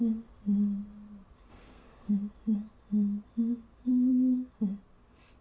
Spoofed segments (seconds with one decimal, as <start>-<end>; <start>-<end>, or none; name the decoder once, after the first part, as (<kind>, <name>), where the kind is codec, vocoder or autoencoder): 1.5-2.1 (codec, SNAC); 3.9-4.6